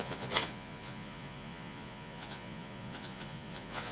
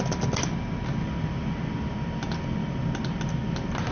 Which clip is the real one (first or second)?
second